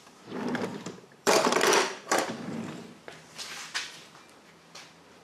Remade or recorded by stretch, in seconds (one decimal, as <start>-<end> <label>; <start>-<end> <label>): 0.0-0.7 recorded; 0.7-2.8 remade; 2.8-5.2 recorded